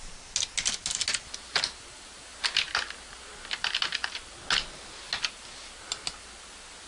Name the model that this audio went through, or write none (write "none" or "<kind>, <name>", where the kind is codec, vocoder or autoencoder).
none